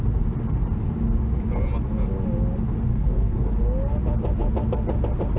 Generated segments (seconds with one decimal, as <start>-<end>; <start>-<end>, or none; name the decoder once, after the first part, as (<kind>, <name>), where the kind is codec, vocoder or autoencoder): 2.9-3.5 (codec, SNAC)